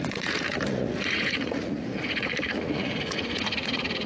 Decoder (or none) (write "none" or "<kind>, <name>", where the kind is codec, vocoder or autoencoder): vocoder, Vocos